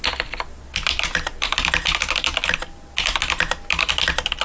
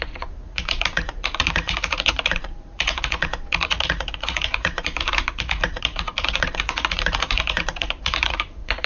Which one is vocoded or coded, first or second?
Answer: second